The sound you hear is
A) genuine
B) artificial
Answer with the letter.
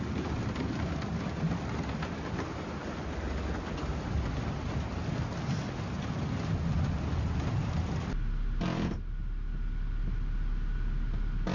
A